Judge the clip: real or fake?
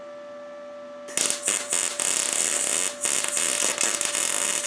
real